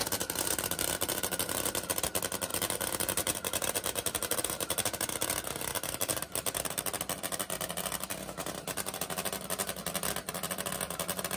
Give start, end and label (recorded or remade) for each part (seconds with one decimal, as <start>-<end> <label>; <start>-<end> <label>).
0.0-1.9 remade; 1.9-2.5 recorded; 2.5-6.8 remade; 6.8-11.4 recorded